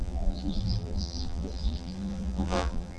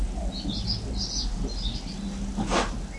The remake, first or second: first